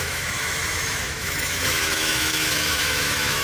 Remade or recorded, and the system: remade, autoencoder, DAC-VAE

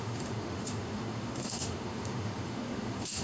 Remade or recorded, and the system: remade, autoencoder, DAC-VAE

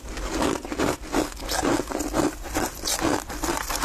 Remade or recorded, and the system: recorded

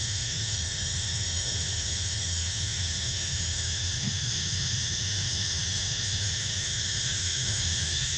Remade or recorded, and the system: remade, autoencoder, DAC-VAE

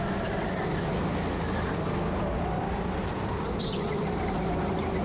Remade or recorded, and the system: recorded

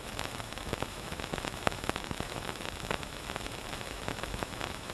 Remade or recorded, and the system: remade, autoencoder, DAC-VAE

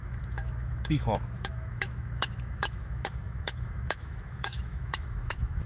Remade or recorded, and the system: remade, autoencoder, DAC-VAE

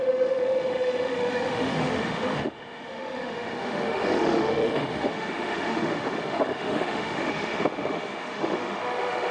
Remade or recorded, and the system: remade, autoencoder, DAC-VAE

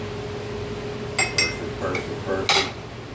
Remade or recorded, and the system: recorded